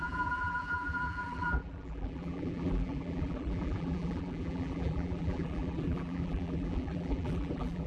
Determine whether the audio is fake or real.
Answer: fake